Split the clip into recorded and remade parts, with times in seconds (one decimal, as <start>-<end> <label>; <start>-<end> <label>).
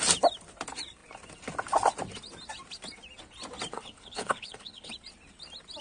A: 0.0-3.7 recorded; 3.7-4.9 remade; 4.9-5.8 recorded